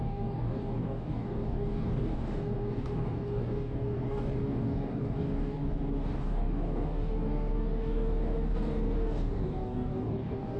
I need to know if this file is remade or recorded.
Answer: remade